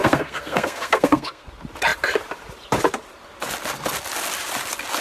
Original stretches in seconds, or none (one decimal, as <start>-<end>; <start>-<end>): 1.5-5.0